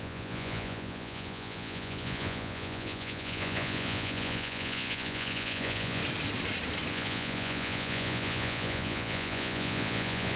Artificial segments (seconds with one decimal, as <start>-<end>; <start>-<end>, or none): 0.0-6.0; 6.9-10.4